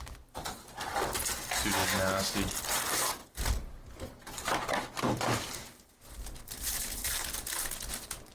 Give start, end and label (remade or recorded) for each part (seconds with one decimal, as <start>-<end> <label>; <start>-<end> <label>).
0.0-8.3 recorded